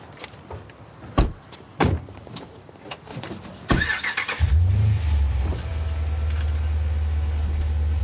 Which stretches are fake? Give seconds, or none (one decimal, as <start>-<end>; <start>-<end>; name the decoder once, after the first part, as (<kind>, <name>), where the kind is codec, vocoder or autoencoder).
3.1-3.7 (vocoder, BigVGAN v2)